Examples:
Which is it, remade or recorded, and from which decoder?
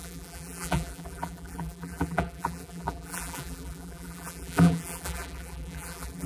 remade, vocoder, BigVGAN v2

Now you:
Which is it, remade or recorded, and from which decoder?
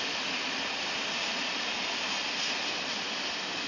recorded